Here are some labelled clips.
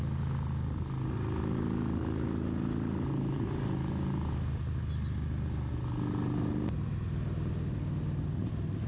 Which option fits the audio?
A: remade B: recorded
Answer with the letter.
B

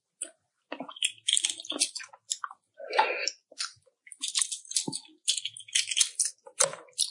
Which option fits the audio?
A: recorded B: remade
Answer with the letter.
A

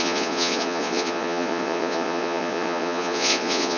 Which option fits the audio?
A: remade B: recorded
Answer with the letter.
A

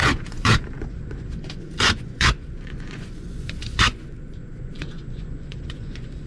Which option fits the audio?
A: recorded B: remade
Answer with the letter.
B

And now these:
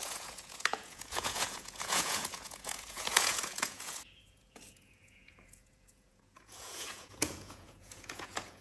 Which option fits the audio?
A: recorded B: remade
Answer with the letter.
B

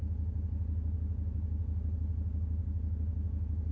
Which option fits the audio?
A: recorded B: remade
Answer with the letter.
A